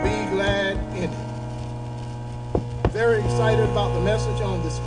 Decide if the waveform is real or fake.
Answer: real